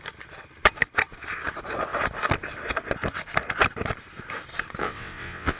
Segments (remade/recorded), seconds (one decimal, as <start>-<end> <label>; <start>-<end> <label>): 0.0-4.8 recorded; 4.8-5.6 remade